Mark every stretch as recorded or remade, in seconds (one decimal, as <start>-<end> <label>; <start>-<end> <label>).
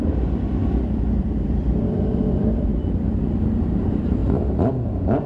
0.0-0.6 remade; 0.6-1.2 recorded; 1.2-2.7 remade; 2.7-3.3 recorded; 3.3-4.2 remade; 4.2-5.3 recorded